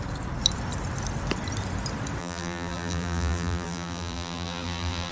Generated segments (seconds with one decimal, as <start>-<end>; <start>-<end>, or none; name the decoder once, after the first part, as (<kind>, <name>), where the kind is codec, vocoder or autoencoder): 2.2-5.1 (vocoder, BigVGAN v2)